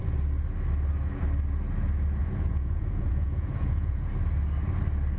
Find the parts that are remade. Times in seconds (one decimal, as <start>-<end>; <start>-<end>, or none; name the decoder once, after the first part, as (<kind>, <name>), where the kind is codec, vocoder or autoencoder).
2.2-4.1 (vocoder, Vocos)